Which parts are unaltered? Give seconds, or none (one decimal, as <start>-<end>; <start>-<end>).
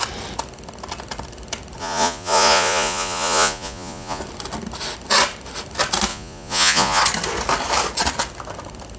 0.0-1.8; 4.2-6.1; 7.0-9.0